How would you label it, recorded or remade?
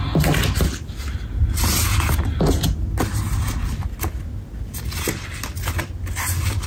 recorded